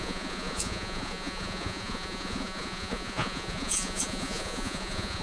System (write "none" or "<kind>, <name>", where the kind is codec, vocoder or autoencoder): vocoder, Vocos